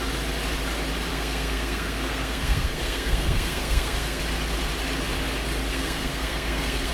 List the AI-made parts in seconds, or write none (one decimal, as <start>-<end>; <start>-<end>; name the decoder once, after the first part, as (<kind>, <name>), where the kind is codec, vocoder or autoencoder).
1.1-4.2 (codec, SNAC); 5.7-6.9